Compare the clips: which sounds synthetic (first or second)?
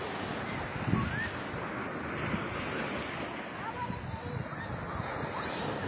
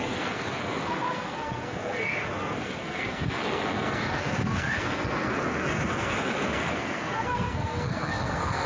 second